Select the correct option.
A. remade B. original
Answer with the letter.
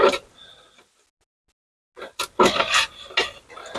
B